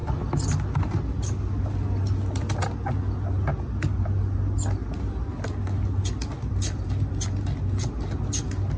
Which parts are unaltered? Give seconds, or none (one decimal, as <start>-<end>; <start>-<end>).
0.0-8.8